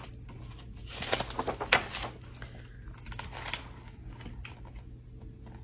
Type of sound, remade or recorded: recorded